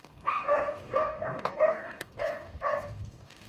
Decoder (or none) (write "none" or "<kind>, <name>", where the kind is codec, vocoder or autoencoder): codec, DAC